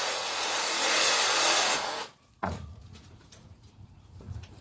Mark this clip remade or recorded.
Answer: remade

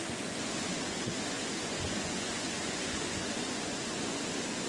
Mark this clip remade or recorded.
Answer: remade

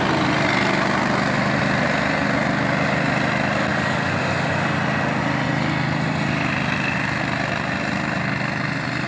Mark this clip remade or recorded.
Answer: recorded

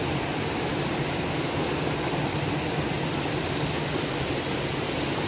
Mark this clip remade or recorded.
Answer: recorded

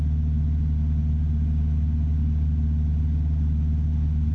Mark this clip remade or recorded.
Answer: recorded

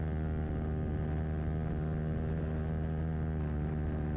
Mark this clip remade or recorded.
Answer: recorded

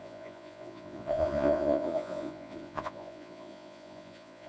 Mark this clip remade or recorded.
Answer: remade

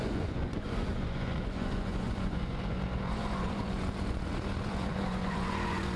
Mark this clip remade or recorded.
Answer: remade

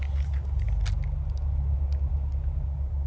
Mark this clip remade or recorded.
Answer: recorded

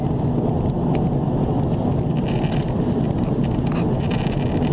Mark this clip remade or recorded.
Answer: recorded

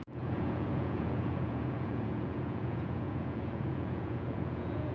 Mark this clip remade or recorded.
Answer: remade